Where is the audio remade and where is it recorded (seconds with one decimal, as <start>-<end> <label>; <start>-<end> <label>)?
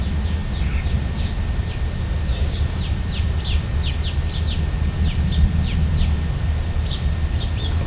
0.0-2.3 recorded; 2.3-2.8 remade; 2.8-7.9 recorded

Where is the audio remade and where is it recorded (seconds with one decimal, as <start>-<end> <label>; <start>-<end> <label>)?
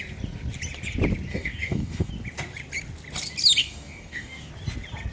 0.0-1.3 recorded; 1.3-2.1 remade; 2.1-3.6 recorded; 3.6-4.5 remade; 4.5-5.1 recorded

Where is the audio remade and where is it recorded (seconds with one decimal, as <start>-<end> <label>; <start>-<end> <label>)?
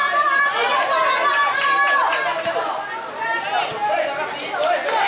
0.0-5.1 recorded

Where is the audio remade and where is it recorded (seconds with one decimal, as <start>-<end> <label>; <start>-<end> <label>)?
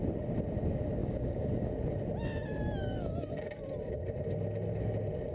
0.0-1.0 recorded; 1.0-1.7 remade; 1.7-2.8 recorded; 2.8-3.5 remade; 3.5-5.3 recorded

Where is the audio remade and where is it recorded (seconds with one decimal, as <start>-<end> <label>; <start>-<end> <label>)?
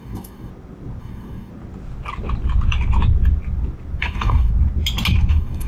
0.0-0.5 remade; 0.5-1.0 recorded; 1.0-1.5 remade; 1.5-4.0 recorded; 4.0-4.5 remade; 4.5-5.3 recorded; 5.3-5.7 remade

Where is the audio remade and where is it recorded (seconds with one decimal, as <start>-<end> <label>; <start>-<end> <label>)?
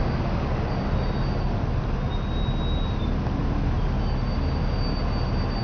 0.0-5.6 recorded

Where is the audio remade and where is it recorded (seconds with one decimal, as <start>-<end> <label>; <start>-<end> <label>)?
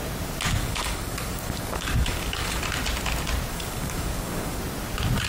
0.0-0.6 recorded; 0.6-2.6 remade; 2.6-3.5 recorded; 3.5-4.6 remade; 4.6-5.3 recorded